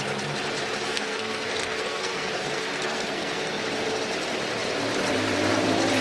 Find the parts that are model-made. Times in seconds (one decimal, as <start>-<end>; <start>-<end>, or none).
0.9-3.6